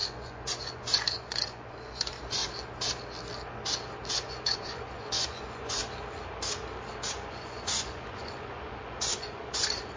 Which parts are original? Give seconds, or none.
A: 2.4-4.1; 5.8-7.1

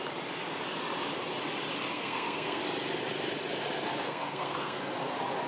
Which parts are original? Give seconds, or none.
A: 0.0-1.9; 2.6-3.9; 4.8-5.5

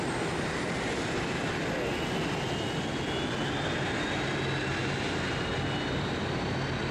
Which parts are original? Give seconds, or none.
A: 0.0-4.8; 6.5-6.9

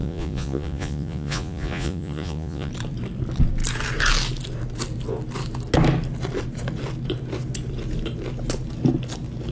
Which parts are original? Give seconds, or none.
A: 2.7-9.5

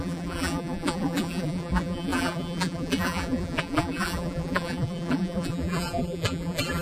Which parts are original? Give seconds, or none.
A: none